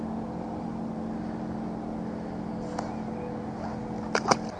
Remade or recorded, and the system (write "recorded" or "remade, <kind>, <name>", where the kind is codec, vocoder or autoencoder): recorded